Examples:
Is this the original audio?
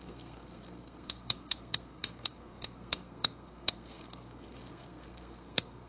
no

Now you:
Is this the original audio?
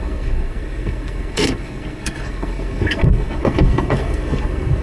no